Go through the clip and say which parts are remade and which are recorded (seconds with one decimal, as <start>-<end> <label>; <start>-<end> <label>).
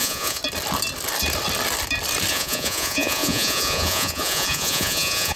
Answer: 0.0-0.4 remade; 0.4-2.3 recorded; 2.3-5.4 remade